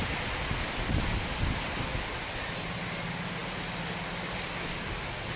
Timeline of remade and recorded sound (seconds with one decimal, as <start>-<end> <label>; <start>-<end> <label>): 0.0-5.4 recorded